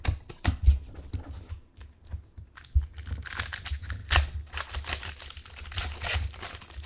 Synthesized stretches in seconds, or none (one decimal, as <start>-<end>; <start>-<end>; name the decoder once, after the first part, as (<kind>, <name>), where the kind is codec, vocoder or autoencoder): none